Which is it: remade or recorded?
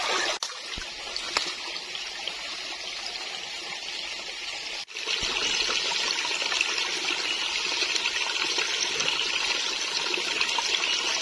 recorded